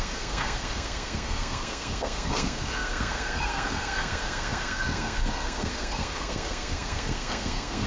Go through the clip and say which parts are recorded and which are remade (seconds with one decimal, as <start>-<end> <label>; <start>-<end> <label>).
0.0-7.9 remade